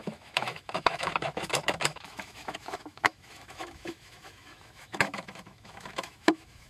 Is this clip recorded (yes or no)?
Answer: no